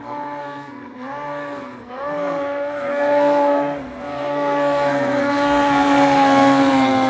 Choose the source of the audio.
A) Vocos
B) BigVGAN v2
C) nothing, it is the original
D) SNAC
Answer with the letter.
D